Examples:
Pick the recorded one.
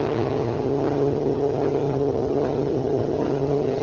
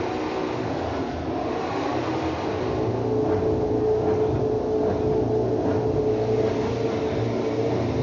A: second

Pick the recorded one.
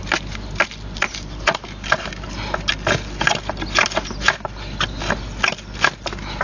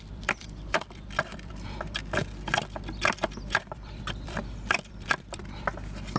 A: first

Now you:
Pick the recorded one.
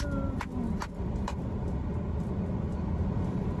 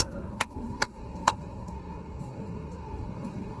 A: first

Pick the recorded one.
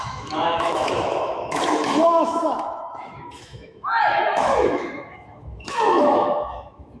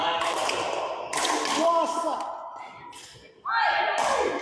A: second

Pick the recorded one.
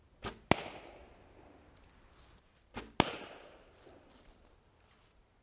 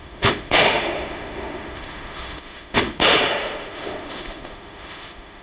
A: first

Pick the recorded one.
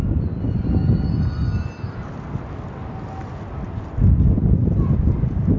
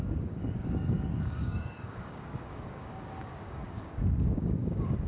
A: first